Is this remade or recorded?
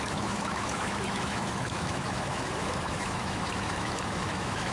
remade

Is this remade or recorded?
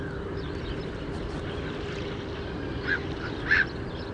recorded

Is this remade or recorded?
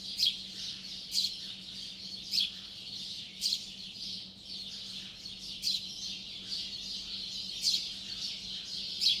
recorded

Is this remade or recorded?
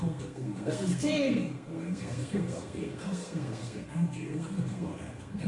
remade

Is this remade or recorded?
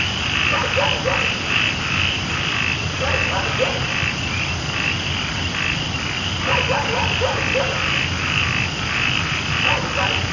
recorded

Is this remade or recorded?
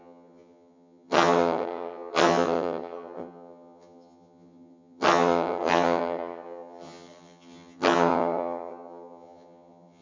remade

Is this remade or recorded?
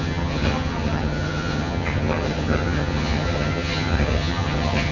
remade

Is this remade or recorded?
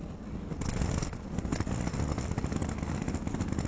recorded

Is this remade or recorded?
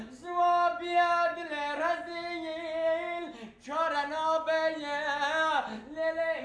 recorded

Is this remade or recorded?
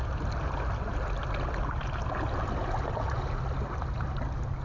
recorded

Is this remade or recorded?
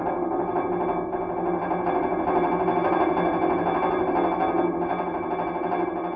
recorded